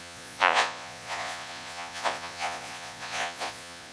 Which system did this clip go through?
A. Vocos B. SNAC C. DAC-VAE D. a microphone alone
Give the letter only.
A